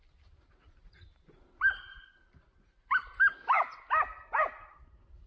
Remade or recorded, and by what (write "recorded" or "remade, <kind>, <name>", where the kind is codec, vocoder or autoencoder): recorded